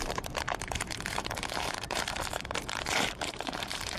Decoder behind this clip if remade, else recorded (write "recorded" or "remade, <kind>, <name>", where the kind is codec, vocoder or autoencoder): remade, vocoder, BigVGAN v2